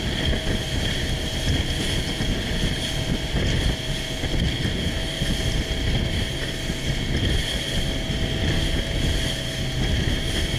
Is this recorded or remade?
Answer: recorded